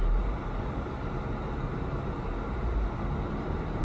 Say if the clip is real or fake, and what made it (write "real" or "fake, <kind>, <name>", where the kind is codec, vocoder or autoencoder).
real